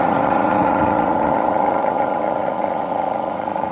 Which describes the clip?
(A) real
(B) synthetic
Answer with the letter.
B